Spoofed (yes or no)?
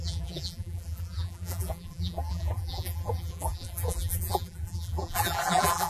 yes